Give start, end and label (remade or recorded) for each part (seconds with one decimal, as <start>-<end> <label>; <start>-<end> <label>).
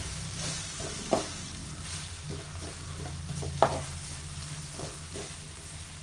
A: 0.0-6.0 recorded